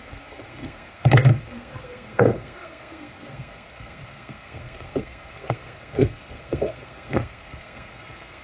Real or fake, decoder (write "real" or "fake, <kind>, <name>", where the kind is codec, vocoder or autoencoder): fake, codec, SNAC